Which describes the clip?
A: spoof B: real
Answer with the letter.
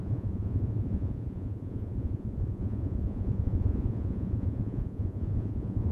A